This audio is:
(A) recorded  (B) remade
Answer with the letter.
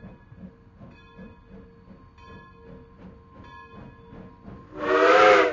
A